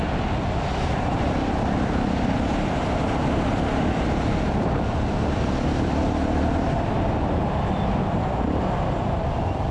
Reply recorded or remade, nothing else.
remade